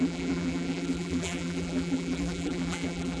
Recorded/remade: remade